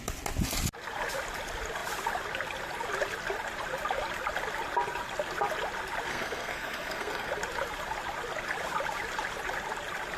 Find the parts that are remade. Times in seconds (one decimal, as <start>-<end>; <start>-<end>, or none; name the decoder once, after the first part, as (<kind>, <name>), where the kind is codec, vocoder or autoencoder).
6.1-7.3 (codec, SNAC)